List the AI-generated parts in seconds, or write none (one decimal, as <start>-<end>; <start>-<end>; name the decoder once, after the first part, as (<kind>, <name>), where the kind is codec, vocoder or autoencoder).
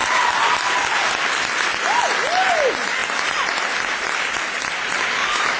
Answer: none